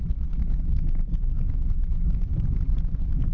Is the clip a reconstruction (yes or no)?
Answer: no